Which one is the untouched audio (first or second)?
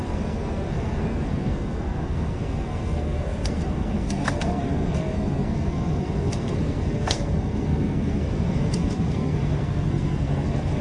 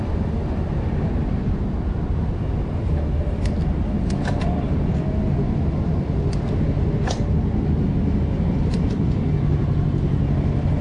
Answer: second